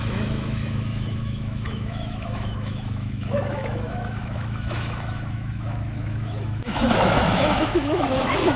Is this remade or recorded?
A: remade